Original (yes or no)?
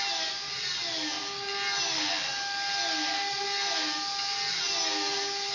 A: yes